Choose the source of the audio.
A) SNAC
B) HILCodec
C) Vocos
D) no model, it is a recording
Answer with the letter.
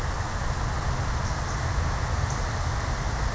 D